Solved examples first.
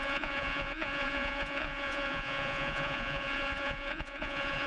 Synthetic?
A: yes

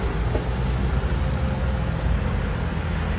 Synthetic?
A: no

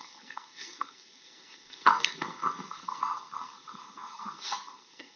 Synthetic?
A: yes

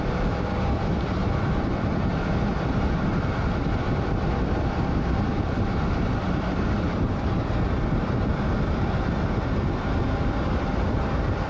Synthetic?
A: yes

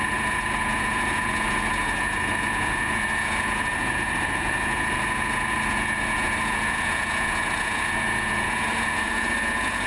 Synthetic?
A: yes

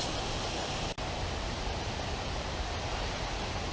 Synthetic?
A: yes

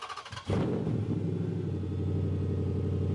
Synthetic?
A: no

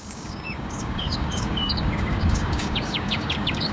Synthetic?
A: yes